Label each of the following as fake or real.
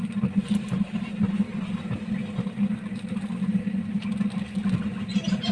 real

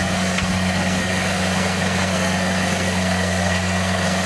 fake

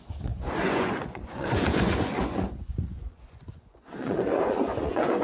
fake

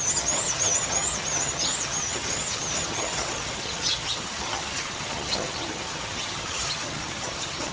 fake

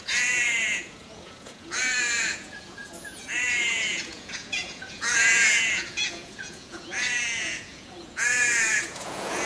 fake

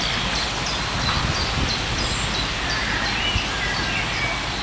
real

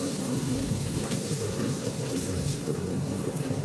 fake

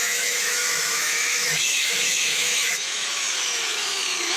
fake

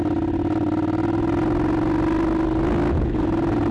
real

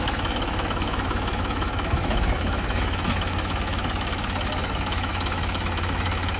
fake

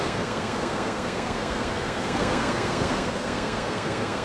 fake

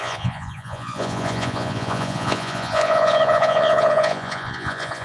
fake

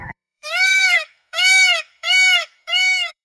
fake